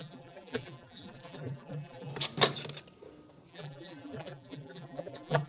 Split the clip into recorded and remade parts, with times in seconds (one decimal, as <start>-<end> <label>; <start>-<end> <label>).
0.0-2.1 remade; 2.1-3.5 recorded; 3.5-5.5 remade